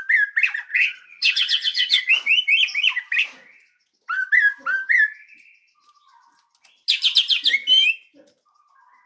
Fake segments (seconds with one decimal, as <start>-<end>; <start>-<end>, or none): 0.7-2.1